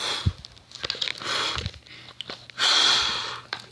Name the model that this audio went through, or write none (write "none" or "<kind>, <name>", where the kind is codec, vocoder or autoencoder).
none